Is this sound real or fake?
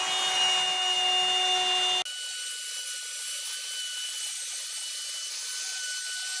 real